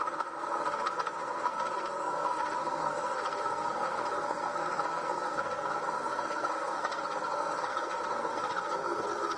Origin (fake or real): fake